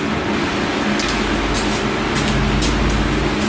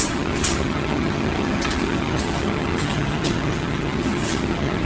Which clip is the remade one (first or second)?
second